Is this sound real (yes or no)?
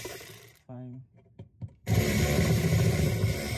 no